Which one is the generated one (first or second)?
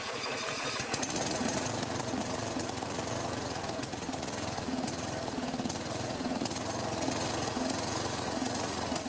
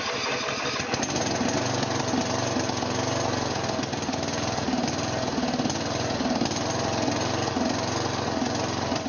first